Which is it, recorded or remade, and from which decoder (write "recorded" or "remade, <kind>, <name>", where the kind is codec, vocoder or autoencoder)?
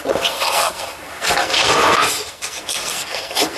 remade, codec, SNAC